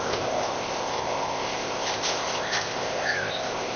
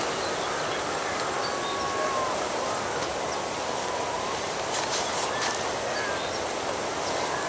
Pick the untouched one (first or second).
second